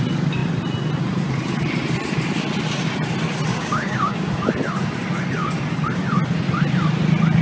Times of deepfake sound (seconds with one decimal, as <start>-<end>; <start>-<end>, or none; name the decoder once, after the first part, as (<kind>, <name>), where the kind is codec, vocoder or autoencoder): 3.5-4.3 (codec, DAC)